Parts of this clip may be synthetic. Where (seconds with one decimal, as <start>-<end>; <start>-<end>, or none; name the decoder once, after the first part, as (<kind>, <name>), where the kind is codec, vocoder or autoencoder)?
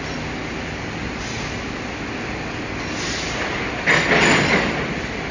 none